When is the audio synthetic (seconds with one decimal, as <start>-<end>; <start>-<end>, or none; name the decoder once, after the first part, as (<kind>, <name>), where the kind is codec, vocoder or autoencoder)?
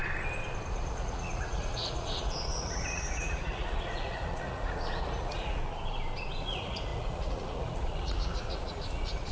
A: 0.7-5.6 (vocoder, Vocos); 6.4-9.3